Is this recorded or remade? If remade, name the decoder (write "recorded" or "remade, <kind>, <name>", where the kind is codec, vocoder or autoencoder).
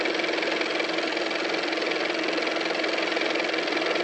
recorded